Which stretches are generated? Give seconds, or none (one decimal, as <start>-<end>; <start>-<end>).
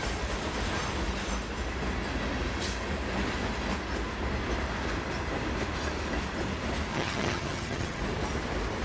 6.9-8.0